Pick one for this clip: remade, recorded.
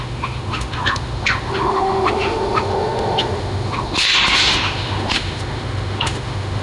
remade